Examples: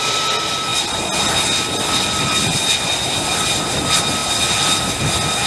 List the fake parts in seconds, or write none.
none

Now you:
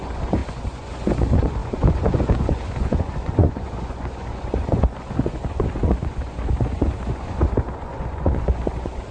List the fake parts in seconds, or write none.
0.0-9.1 (vocoder, Vocos)

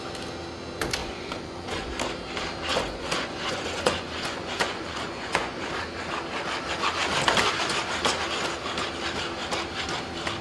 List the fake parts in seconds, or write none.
1.0-1.9 (vocoder, Vocos); 2.7-5.7

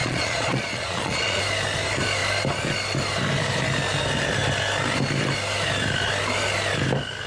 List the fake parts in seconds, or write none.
0.0-1.4 (vocoder, Vocos)

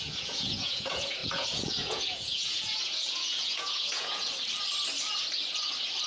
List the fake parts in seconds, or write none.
0.0-4.3 (vocoder, Vocos)

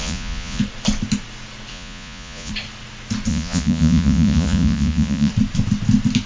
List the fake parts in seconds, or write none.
0.0-0.6 (vocoder, Vocos); 1.7-2.5; 3.3-5.3

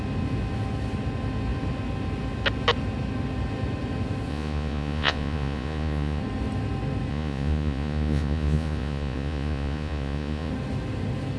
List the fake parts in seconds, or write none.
4.3-6.2 (vocoder, Vocos); 7.1-10.5